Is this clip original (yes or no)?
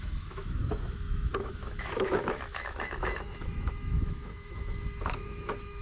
no